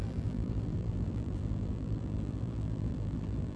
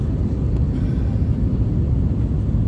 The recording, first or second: second